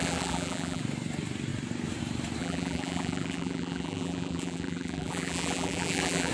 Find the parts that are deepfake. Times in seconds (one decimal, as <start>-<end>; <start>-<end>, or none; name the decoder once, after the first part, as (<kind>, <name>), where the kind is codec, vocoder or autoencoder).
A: 0.0-0.8 (vocoder, BigVGAN v2); 2.4-6.3

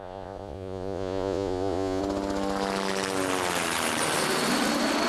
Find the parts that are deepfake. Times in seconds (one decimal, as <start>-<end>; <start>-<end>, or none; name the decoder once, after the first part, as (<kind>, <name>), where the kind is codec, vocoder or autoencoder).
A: 0.0-2.0 (vocoder, Vocos)

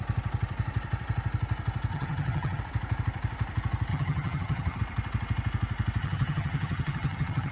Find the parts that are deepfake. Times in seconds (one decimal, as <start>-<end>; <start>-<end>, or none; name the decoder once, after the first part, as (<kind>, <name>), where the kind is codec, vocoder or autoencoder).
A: 1.9-2.6 (vocoder, HiFi-GAN); 3.9-4.8; 6.0-7.5

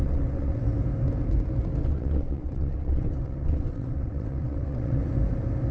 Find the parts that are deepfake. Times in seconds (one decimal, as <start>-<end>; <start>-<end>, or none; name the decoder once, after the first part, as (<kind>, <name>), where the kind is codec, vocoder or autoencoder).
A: 0.0-0.6 (vocoder, WaveNeXt); 1.8-5.0

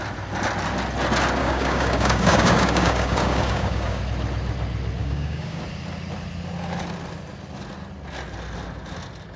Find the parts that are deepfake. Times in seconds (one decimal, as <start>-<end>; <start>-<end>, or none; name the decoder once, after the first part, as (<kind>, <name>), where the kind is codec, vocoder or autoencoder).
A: 1.4-4.0 (codec, DAC); 5.0-5.6